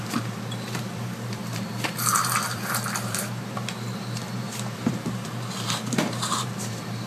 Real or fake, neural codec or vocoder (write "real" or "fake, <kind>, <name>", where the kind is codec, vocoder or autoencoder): fake, vocoder, BigVGAN v2